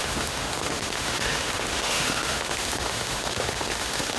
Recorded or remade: remade